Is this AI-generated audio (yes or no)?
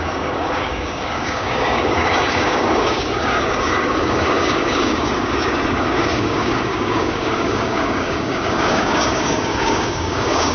yes